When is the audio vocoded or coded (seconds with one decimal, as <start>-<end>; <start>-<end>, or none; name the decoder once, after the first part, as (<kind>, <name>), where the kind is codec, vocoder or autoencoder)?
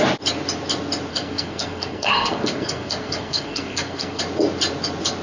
1.1-4.2 (codec, SNAC)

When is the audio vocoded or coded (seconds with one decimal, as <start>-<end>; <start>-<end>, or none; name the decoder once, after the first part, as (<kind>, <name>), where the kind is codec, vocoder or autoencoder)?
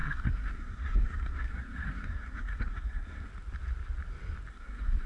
0.0-3.3 (codec, SNAC); 4.5-5.1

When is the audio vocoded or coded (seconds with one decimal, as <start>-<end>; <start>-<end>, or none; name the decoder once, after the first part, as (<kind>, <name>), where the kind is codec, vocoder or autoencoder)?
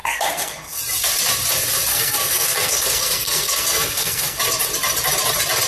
0.0-0.8 (codec, SNAC); 1.9-4.4